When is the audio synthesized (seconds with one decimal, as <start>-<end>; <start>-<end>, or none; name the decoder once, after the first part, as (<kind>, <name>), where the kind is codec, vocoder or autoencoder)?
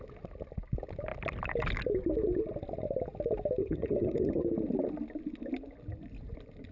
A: 3.6-4.4 (vocoder, HiFi-GAN)